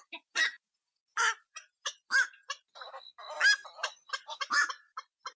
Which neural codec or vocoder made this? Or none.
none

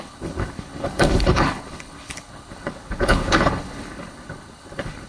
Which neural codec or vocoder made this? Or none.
codec, HILCodec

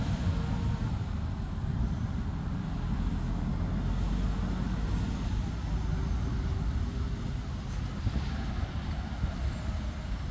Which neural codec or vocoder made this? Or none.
none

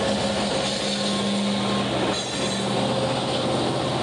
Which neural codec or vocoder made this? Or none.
none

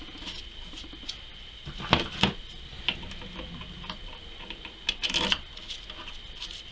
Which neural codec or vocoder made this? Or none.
none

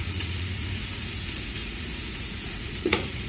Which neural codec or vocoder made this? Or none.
vocoder, Vocos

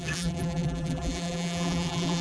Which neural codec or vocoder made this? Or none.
vocoder, BigVGAN v2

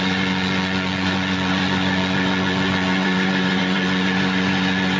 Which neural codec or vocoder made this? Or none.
vocoder, Vocos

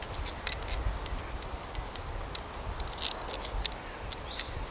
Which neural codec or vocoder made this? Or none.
none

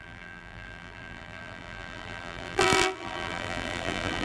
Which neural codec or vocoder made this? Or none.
vocoder, BigVGAN v2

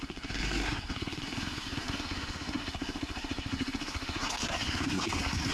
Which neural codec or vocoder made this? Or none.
codec, SNAC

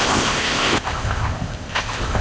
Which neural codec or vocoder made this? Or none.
codec, ZipCodec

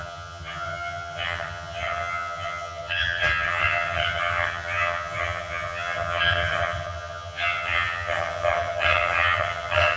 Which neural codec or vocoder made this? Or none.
vocoder, HiFi-GAN